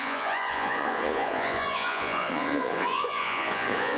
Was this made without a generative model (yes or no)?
no